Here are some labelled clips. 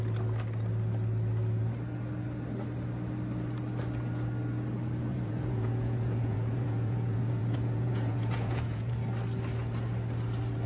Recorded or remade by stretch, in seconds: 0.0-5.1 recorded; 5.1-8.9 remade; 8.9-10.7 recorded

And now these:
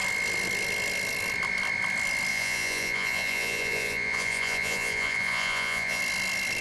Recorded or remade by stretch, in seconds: 0.0-2.3 recorded; 2.3-6.0 remade; 6.0-6.6 recorded

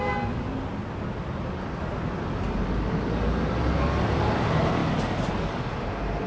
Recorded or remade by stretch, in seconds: 0.0-6.3 recorded

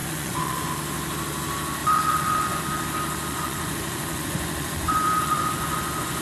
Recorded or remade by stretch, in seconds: 0.0-0.7 remade; 0.7-1.8 recorded; 1.8-2.6 remade; 2.6-3.3 recorded; 3.3-6.2 remade

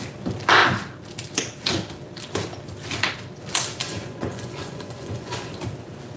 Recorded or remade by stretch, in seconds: 0.0-3.8 recorded; 3.8-5.5 remade; 5.5-6.2 recorded

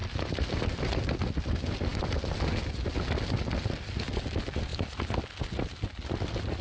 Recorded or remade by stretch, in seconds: 0.0-6.6 recorded

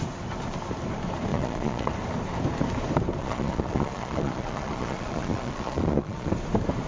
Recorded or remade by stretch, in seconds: 0.0-1.3 recorded; 1.3-1.9 remade; 1.9-3.2 recorded; 3.2-6.3 remade; 6.3-6.9 recorded